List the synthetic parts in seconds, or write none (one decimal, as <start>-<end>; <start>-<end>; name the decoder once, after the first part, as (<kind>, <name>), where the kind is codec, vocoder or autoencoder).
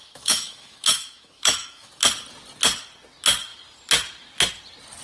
0.0-1.9 (autoencoder, DAC-VAE)